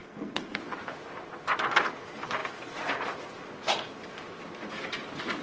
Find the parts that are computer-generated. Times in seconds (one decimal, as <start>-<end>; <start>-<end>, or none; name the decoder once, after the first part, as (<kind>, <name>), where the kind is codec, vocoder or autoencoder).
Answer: 0.0-0.6 (codec, SNAC)